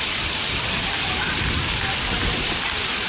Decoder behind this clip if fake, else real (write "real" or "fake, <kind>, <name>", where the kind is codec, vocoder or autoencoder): fake, vocoder, BigVGAN v2